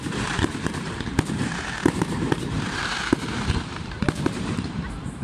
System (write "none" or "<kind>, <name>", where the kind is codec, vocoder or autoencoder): vocoder, BigVGAN v2